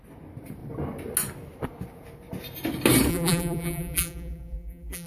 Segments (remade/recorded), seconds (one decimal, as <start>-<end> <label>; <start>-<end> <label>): 0.0-3.1 recorded; 3.1-5.1 remade